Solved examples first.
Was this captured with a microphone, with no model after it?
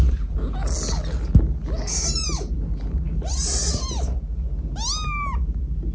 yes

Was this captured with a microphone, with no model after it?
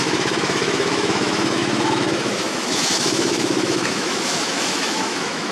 no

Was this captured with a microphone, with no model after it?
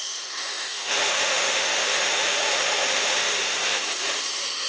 no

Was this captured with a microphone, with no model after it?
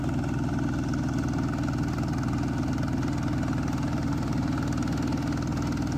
yes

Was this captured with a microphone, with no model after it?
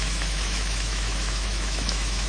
no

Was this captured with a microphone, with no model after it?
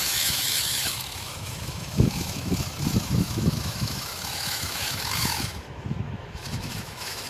no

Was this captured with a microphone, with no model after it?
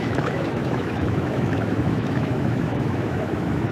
no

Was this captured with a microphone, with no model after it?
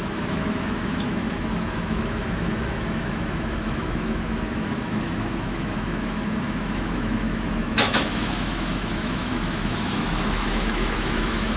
no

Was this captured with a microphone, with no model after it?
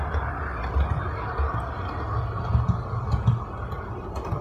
yes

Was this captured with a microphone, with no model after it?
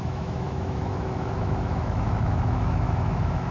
no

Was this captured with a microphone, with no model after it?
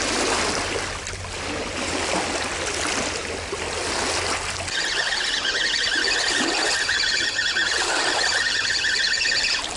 yes